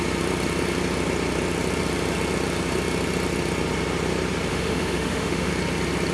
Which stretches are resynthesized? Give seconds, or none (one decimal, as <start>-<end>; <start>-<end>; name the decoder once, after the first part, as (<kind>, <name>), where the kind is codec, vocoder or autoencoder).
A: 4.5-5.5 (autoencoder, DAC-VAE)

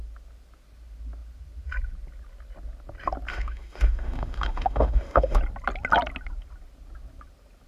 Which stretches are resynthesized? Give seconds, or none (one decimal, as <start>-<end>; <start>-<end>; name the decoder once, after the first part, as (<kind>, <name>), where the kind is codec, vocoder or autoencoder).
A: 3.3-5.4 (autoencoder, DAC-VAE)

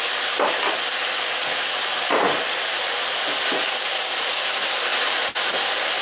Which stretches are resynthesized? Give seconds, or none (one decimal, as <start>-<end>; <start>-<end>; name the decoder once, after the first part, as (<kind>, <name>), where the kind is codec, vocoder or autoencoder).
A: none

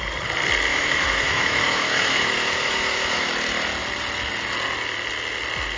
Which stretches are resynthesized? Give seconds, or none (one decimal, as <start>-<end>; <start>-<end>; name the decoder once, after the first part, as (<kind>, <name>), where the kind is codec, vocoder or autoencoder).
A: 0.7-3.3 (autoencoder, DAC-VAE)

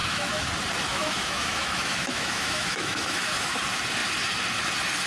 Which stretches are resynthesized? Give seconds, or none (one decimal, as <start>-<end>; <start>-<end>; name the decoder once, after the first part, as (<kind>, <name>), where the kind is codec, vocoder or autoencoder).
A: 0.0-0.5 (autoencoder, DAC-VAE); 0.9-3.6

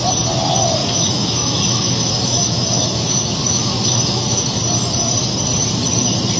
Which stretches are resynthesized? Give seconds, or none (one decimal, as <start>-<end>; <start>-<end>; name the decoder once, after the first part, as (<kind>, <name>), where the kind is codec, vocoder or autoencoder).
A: 0.8-4.6 (autoencoder, DAC-VAE)

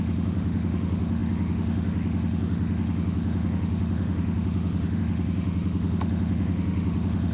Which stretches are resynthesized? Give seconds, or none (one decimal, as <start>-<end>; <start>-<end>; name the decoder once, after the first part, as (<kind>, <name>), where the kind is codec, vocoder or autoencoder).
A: 0.0-7.3 (autoencoder, DAC-VAE)